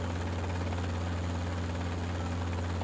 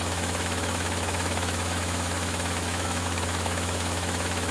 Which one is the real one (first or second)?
first